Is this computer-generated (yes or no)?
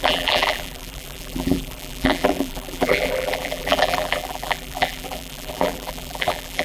yes